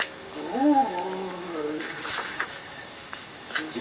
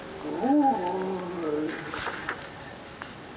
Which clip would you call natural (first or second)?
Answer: second